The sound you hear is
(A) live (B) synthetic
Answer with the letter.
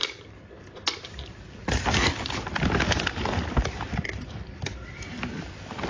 A